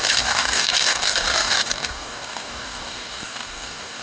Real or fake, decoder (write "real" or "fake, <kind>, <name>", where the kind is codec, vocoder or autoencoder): fake, codec, DAC